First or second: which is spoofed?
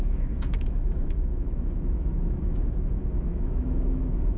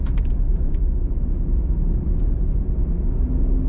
first